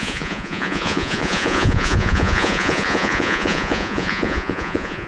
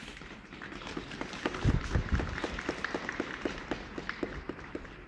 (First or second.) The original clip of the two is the second